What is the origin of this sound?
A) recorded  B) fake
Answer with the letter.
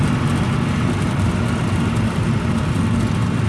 A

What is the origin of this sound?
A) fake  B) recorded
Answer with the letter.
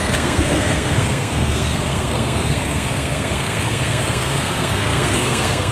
A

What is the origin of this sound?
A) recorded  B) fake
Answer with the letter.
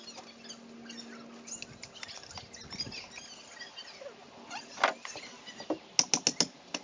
A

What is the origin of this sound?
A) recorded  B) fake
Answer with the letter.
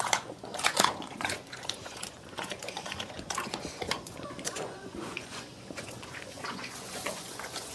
B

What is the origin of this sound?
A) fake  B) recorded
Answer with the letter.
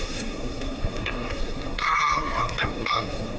A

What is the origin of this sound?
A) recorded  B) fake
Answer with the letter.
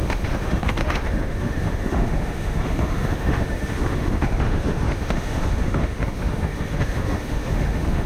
B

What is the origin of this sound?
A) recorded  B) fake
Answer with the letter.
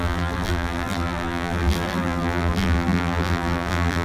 B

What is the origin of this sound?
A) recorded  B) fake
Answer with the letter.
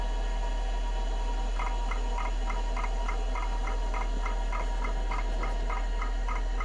A